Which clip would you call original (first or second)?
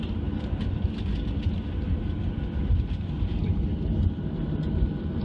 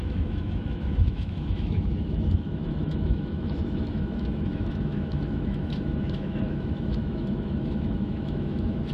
first